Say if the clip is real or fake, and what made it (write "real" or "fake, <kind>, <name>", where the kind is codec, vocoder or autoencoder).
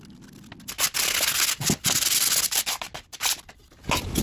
real